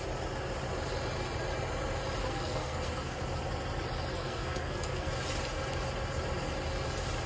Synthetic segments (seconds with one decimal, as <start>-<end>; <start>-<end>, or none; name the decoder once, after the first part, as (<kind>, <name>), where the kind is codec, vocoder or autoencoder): 2.2-3.2 (codec, SNAC); 4.1-5.1